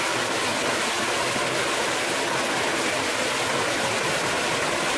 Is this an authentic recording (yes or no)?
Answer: yes